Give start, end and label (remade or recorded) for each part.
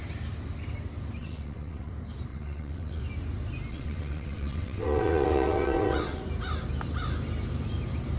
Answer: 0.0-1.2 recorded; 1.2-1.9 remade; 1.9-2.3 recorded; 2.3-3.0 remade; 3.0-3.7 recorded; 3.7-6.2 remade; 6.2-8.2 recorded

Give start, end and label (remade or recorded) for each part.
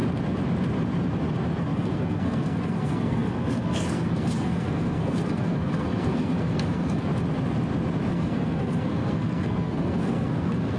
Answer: 0.0-1.6 recorded; 1.6-7.1 remade; 7.1-8.1 recorded; 8.1-10.8 remade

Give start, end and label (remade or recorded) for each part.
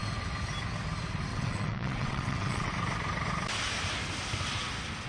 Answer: 0.0-1.3 recorded; 1.3-2.7 remade; 2.7-5.1 recorded